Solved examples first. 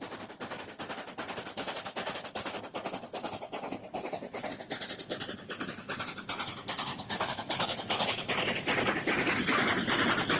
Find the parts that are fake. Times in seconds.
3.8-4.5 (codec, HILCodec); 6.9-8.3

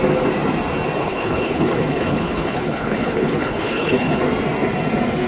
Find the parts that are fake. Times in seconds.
1.0-4.2 (codec, HILCodec)

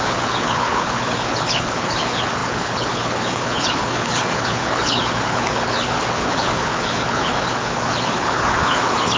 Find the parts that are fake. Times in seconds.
0.0-9.2 (codec, HILCodec)

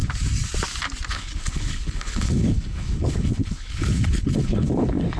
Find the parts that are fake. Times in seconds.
1.1-5.2 (codec, HILCodec)

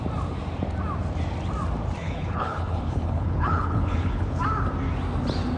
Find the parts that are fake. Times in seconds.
2.0-4.4 (codec, HILCodec)